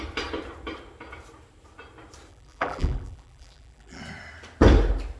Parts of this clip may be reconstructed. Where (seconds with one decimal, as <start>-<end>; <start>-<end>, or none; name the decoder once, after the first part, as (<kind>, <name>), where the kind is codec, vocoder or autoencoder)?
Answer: 2.3-4.0 (vocoder, BigVGAN v2)